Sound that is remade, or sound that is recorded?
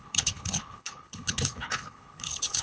remade